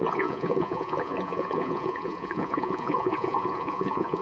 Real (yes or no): no